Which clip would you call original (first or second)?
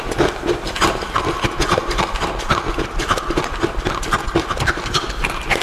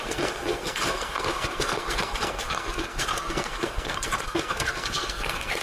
first